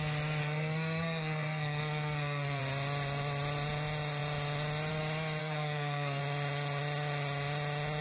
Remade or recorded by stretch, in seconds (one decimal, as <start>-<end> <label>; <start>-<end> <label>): 0.0-0.4 recorded; 0.4-2.6 remade; 2.6-5.4 recorded; 5.4-6.2 remade; 6.2-8.0 recorded